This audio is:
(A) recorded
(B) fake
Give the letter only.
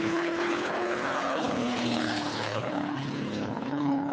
B